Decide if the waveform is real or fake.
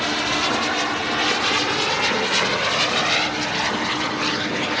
real